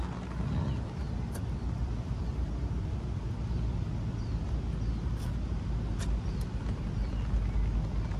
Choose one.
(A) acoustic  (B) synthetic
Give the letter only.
A